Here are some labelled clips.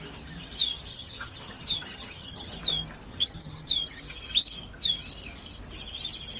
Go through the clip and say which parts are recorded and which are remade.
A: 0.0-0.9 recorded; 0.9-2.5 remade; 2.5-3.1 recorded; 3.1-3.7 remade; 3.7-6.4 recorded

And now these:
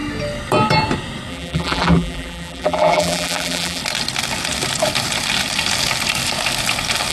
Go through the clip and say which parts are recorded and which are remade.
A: 0.0-1.3 recorded; 1.3-3.8 remade; 3.8-7.1 recorded

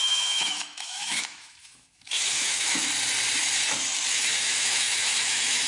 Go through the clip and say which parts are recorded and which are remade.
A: 0.0-2.9 remade; 2.9-4.1 recorded; 4.1-5.7 remade

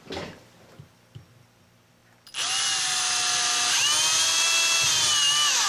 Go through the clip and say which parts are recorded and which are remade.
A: 0.0-5.7 recorded

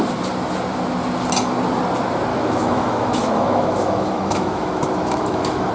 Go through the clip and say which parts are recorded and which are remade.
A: 0.0-2.3 recorded; 2.3-5.7 remade

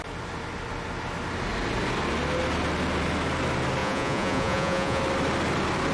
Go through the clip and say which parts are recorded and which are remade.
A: 0.0-3.8 recorded; 3.8-5.0 remade; 5.0-5.9 recorded